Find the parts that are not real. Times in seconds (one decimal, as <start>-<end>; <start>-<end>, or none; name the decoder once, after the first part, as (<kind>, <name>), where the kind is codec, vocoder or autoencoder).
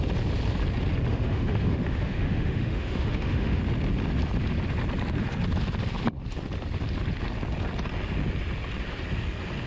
1.1-3.6 (autoencoder, DAC-VAE)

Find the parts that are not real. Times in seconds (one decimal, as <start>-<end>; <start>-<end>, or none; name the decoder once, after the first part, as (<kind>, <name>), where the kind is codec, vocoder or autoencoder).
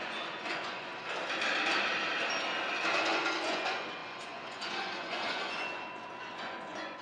0.0-0.9 (vocoder, Vocos); 2.9-7.0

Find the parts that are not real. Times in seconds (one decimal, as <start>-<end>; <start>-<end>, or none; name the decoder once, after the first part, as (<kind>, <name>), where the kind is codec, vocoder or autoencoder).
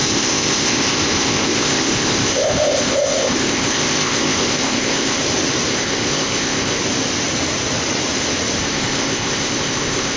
0.0-5.2 (codec, ZipCodec); 5.7-6.8; 8.6-10.2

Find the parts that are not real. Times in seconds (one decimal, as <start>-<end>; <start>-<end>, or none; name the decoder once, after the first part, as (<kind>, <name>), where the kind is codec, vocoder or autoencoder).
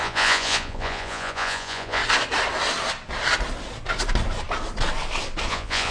0.0-2.0 (vocoder, Vocos); 5.5-5.9